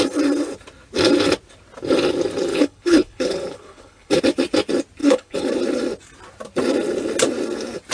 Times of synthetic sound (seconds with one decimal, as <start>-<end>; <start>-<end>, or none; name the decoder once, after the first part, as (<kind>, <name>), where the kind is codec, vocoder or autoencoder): 2.5-4.2 (codec, HILCodec); 5.0-5.5